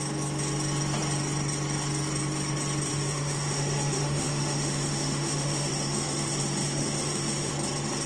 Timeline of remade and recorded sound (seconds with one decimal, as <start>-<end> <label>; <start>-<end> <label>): 0.0-2.9 recorded; 2.9-7.5 remade; 7.5-8.1 recorded